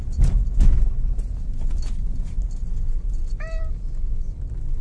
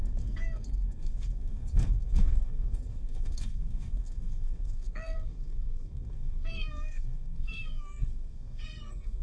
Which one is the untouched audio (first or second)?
first